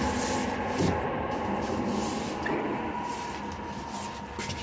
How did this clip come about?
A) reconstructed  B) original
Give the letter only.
B